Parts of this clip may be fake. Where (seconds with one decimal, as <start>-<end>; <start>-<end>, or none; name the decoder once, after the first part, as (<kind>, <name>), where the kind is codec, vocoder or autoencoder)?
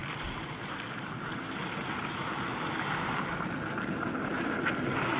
none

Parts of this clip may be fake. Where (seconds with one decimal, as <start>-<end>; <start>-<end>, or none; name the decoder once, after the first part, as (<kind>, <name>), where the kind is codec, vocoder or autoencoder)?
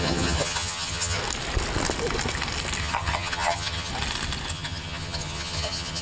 0.0-1.2 (vocoder, HiFi-GAN); 2.8-3.9; 4.5-6.0